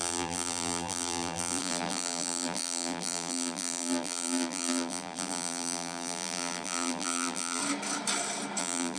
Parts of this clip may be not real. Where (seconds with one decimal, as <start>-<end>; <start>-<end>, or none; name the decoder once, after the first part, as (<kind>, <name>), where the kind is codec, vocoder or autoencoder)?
0.0-7.6 (vocoder, BigVGAN v2); 8.6-9.0